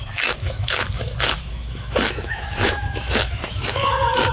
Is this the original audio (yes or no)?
no